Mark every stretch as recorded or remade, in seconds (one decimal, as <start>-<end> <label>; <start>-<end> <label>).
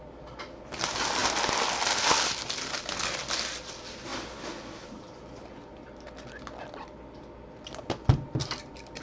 0.0-9.0 recorded